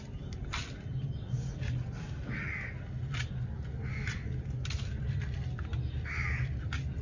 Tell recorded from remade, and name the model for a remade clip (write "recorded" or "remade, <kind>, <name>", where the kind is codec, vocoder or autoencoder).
recorded